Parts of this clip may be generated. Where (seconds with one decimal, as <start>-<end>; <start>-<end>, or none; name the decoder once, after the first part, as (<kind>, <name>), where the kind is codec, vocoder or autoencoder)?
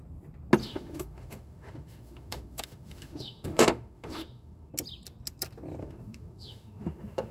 0.6-4.7 (autoencoder, DAC-VAE); 5.8-7.3